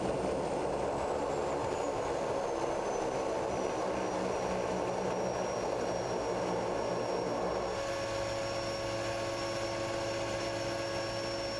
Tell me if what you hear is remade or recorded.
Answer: recorded